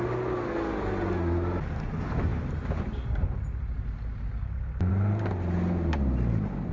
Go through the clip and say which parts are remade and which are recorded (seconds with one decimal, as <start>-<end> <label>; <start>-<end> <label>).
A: 0.0-6.7 recorded